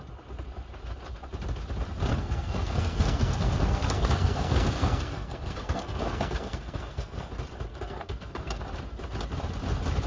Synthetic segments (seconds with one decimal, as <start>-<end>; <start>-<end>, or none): 2.1-7.3; 7.7-8.6